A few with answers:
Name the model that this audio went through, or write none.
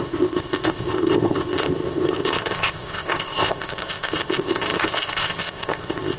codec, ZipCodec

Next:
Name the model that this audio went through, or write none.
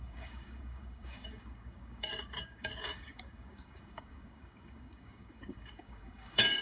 codec, DAC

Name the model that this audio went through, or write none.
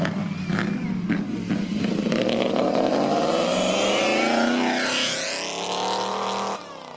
none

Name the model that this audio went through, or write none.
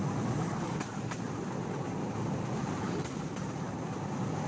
vocoder, BigVGAN v2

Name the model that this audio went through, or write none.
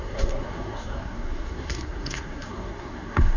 codec, SNAC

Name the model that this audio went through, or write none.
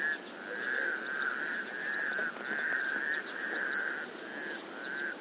none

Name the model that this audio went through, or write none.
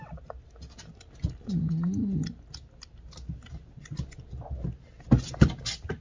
none